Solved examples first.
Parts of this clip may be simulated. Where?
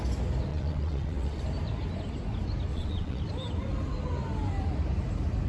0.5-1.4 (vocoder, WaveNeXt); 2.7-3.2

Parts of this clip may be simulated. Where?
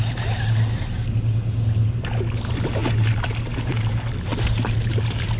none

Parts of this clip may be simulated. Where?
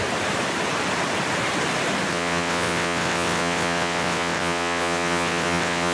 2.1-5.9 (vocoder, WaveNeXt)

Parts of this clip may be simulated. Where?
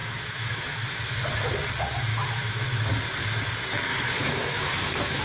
0.0-1.0 (autoencoder, DAC-VAE); 2.1-2.8; 3.9-5.2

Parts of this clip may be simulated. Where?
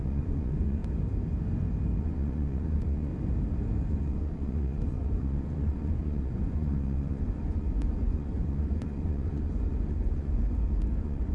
0.0-0.8 (vocoder, Vocos); 2.0-3.1; 3.9-11.3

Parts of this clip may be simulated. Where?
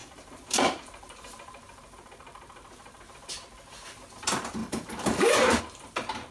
0.0-3.2 (vocoder, BigVGAN v2); 4.6-5.6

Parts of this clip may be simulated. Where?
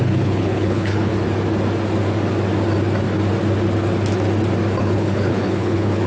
0.0-1.1 (codec, HILCodec); 4.8-6.1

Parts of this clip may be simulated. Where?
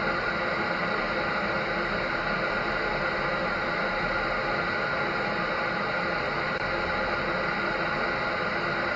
none